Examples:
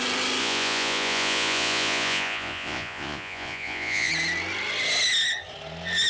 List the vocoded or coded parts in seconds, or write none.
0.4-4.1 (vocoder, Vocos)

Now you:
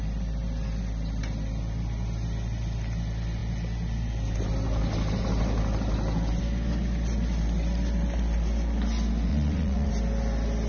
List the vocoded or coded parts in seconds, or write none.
9.3-9.9 (vocoder, Vocos)

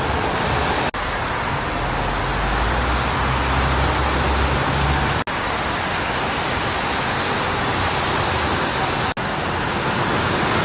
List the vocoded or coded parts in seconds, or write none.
none

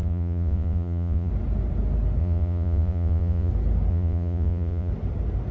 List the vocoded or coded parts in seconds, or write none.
0.0-1.3 (vocoder, Vocos); 2.2-3.5; 3.9-4.9

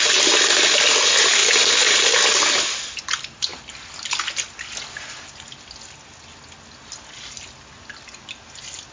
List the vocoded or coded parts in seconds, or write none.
none

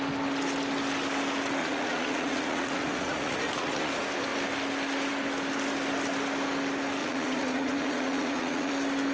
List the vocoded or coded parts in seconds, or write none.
1.6-3.9 (vocoder, Vocos); 7.0-8.7